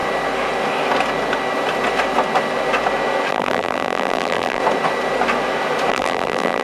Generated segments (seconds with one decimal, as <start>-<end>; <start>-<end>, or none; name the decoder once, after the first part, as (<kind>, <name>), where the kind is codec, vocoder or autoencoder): 3.3-4.6 (vocoder, BigVGAN v2); 5.9-6.6